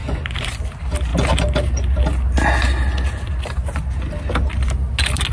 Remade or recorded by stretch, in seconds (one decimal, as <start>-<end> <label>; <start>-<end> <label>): 0.0-0.6 remade; 0.6-5.3 recorded